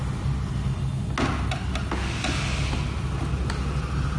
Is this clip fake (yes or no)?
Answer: no